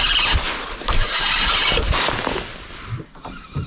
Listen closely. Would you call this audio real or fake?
real